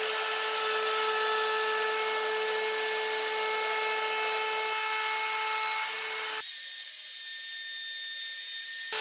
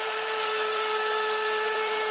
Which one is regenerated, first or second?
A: second